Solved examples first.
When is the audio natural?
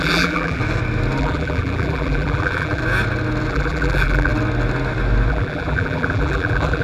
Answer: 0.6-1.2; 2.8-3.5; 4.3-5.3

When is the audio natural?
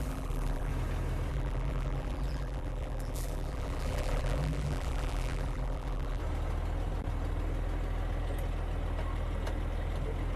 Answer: 0.7-1.3; 6.2-10.4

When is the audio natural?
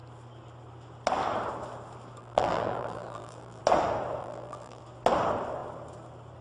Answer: 0.0-2.2; 3.6-4.2; 4.8-6.4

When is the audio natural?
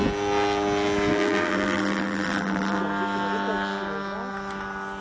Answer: 0.0-1.1; 2.8-5.0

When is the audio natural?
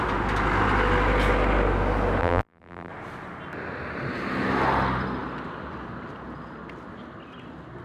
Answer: 0.0-2.2; 2.9-7.8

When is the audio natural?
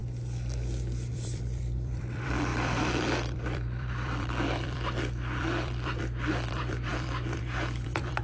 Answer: 0.0-1.1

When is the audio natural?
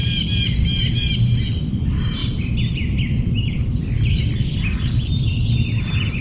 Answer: 0.0-6.2